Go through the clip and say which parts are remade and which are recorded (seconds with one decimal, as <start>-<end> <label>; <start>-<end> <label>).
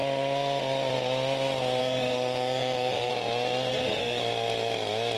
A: 0.0-1.8 recorded; 1.8-3.1 remade; 3.1-3.7 recorded; 3.7-4.2 remade; 4.2-5.2 recorded